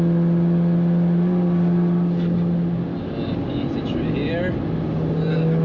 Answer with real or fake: real